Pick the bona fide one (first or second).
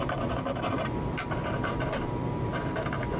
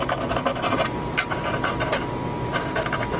second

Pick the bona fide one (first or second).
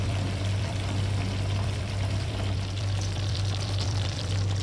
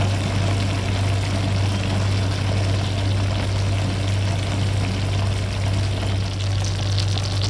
second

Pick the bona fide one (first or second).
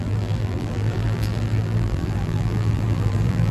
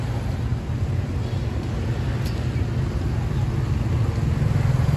second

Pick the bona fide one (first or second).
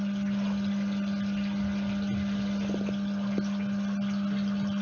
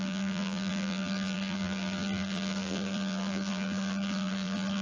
first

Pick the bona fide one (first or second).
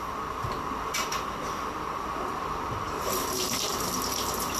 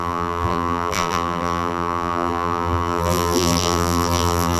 first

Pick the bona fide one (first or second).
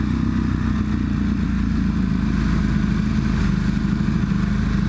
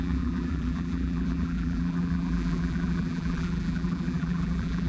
first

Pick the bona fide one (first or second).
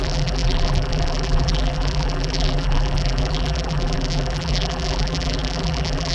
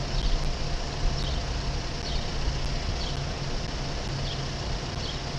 second